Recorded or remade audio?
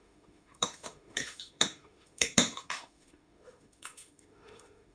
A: remade